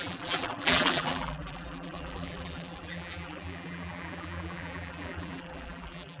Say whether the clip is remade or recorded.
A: remade